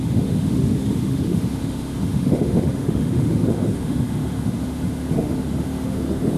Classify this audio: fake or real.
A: fake